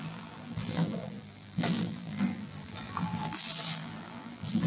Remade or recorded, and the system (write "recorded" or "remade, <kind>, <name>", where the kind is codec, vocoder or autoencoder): remade, vocoder, BigVGAN v2